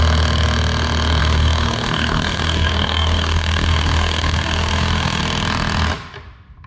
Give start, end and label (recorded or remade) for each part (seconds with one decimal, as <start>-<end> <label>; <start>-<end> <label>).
0.0-1.2 recorded; 1.2-5.2 remade; 5.2-6.7 recorded